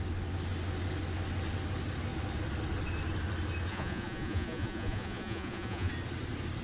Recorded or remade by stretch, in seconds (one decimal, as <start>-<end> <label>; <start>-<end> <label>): 0.0-3.7 recorded; 3.7-5.9 remade; 5.9-6.6 recorded